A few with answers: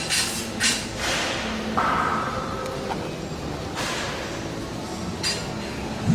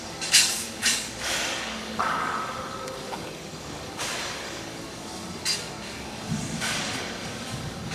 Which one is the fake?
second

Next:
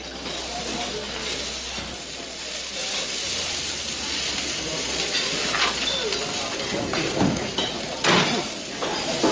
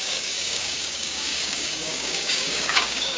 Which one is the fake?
second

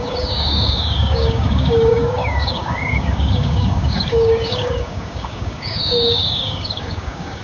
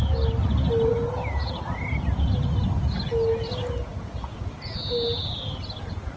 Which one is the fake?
first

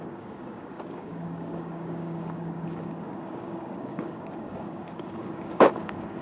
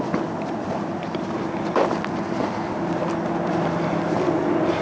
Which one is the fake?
first